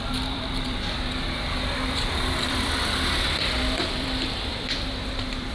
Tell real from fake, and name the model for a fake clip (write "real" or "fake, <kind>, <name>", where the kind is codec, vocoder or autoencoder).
fake, vocoder, BigVGAN v2